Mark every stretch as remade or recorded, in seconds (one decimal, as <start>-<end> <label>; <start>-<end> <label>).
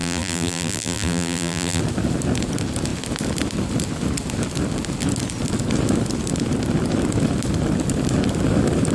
0.0-1.8 remade; 1.8-8.9 recorded